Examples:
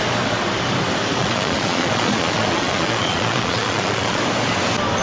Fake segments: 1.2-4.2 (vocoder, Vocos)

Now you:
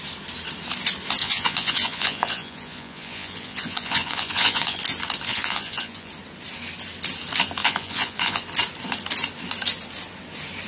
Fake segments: 1.2-4.8 (vocoder, Vocos); 5.3-6.1; 7.6-8.4

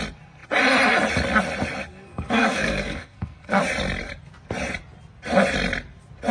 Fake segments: 1.9-3.6 (codec, SNAC)

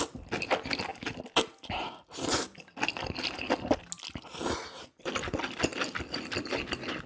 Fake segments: none

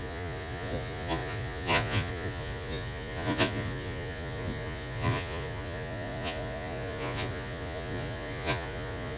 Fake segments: 0.0-9.2 (vocoder, Vocos)